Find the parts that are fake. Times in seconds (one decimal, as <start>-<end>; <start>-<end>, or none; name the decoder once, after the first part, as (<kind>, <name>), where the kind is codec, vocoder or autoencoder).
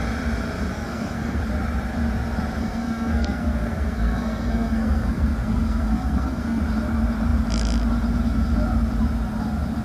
0.7-1.4 (codec, SNAC); 2.6-6.6